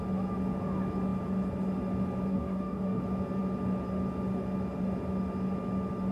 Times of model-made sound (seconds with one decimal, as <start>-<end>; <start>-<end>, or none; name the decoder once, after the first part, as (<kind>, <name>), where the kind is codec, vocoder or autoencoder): 2.3-3.0 (codec, DAC)

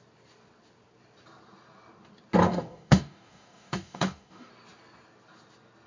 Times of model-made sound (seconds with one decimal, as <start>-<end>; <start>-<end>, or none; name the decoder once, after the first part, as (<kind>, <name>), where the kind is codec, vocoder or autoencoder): 2.4-4.5 (codec, DAC)

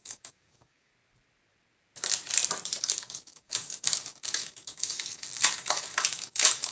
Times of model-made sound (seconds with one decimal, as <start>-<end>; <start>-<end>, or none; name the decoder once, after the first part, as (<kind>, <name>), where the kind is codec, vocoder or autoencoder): 0.0-0.9 (codec, DAC); 2.8-6.7

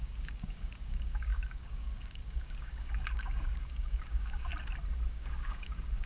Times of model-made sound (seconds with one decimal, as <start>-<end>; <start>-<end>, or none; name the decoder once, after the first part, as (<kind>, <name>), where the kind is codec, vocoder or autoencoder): 0.0-4.5 (codec, DAC); 5.1-6.1

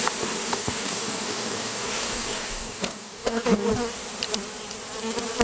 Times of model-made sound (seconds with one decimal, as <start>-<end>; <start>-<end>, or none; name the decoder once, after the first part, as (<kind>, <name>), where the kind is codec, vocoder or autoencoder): 0.5-3.7 (codec, DAC)

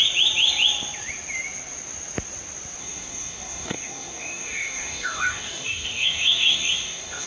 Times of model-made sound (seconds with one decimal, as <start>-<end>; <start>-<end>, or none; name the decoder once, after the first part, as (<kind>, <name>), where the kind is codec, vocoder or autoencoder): 2.8-7.3 (codec, DAC)